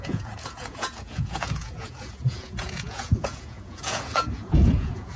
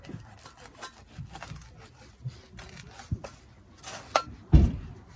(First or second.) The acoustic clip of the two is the second